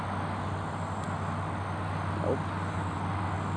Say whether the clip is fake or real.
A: real